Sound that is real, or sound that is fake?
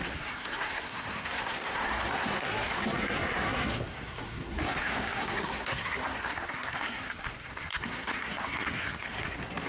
fake